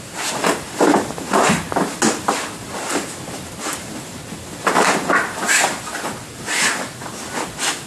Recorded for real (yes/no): yes